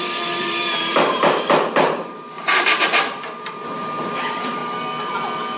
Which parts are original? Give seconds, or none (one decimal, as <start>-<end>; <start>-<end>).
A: 4.6-5.6